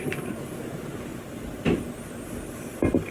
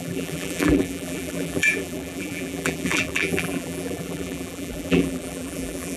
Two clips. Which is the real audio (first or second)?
first